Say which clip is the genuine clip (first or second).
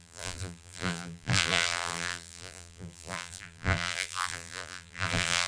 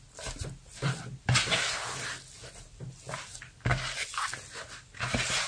second